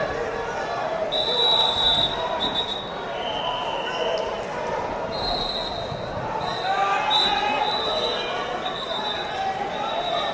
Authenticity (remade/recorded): recorded